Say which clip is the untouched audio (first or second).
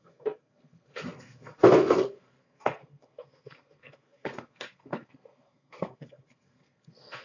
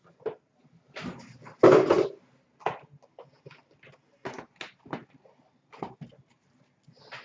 second